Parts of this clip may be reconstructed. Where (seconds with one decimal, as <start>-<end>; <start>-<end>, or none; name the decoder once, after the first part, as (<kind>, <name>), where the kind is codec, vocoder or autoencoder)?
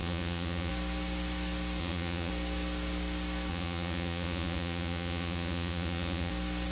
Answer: 0.0-0.7 (vocoder, Vocos); 1.8-2.3; 3.5-6.3